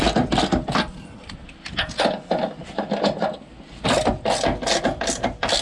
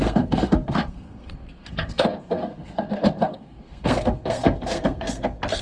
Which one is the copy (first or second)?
second